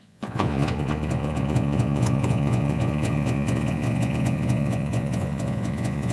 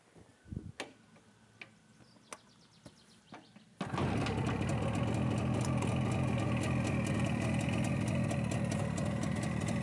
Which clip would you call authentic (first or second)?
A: second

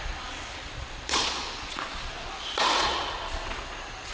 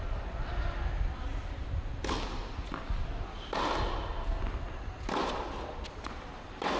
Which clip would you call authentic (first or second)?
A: second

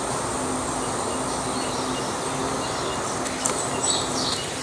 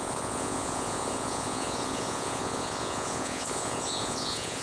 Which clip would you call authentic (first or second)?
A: first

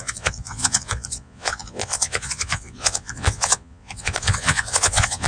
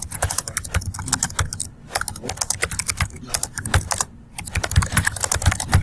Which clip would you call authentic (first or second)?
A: second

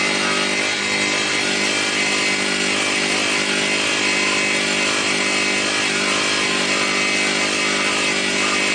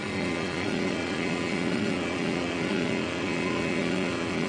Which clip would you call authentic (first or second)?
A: first